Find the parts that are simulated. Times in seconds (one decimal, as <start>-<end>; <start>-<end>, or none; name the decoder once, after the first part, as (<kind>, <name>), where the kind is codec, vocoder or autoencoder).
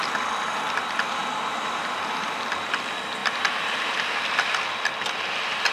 none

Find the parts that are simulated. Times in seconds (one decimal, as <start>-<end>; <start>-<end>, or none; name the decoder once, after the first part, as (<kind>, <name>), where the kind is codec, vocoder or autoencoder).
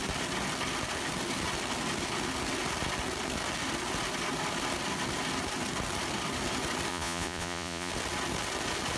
6.9-7.9 (vocoder, Vocos)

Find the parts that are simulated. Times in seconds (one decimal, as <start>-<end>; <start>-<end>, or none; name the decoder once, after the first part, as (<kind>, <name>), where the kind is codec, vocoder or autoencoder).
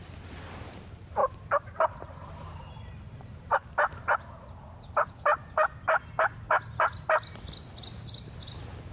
1.2-3.7 (vocoder, BigVGAN v2)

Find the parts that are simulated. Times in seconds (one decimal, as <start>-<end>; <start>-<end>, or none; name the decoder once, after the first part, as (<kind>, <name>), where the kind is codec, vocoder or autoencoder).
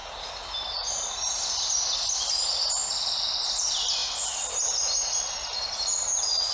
none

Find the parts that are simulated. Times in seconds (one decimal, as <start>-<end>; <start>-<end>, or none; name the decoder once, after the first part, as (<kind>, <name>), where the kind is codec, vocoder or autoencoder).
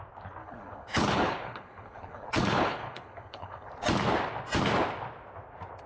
0.4-3.7 (codec, HILCodec)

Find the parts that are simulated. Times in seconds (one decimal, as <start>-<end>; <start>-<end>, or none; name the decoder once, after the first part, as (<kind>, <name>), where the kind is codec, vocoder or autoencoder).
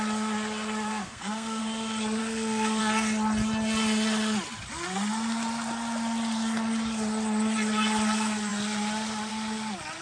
0.9-1.6 (codec, SNAC); 2.2-2.8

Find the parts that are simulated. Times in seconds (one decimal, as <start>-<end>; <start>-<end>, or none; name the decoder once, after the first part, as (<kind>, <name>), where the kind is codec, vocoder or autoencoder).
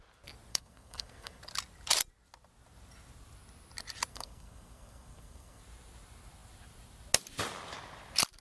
0.5-1.4 (codec, SNAC); 4.1-5.6